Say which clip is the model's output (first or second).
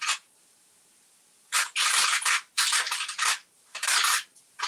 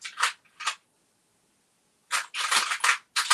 first